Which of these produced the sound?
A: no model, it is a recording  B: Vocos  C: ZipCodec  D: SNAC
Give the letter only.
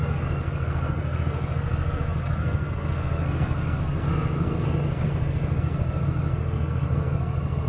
D